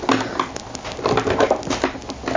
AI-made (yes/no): no